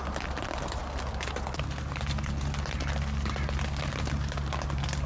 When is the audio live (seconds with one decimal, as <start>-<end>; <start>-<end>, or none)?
0.0-5.1